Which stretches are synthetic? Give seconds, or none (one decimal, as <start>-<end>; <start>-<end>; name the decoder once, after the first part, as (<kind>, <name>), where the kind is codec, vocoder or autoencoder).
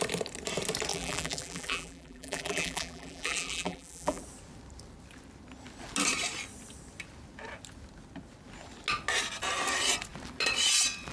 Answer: 0.9-4.2 (vocoder, BigVGAN v2)